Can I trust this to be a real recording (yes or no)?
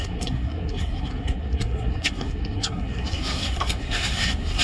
no